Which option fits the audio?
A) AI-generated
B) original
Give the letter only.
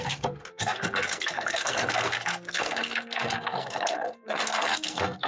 A